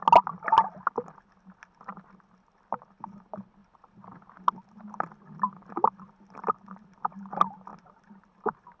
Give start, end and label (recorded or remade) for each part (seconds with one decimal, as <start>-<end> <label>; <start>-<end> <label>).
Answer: 0.0-8.8 recorded